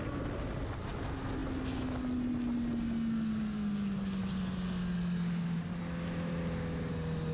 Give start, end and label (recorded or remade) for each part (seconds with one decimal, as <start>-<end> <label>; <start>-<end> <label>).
0.0-7.3 recorded